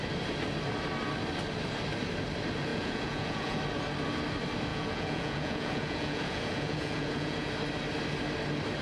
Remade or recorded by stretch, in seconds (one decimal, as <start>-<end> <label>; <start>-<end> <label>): 0.0-2.7 recorded; 2.7-3.6 remade; 3.6-4.7 recorded; 4.7-7.5 remade; 7.5-8.8 recorded